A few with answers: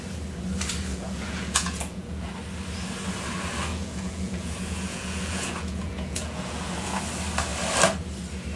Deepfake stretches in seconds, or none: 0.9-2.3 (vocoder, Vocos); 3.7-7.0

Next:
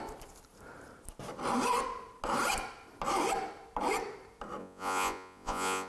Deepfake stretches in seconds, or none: 4.6-5.9 (vocoder, Vocos)

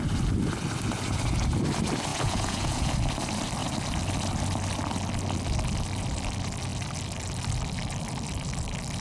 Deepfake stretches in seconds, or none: 2.1-2.9 (vocoder, Vocos)